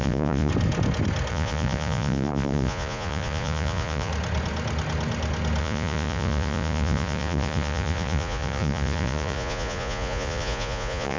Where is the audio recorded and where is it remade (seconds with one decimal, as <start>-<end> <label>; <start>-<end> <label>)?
0.0-0.5 remade; 0.5-1.3 recorded; 1.3-4.1 remade; 4.1-5.6 recorded; 5.6-11.2 remade